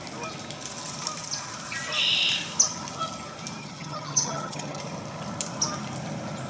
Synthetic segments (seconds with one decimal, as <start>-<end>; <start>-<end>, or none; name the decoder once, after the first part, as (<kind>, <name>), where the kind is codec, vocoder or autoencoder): 3.6-4.8 (vocoder, HiFi-GAN)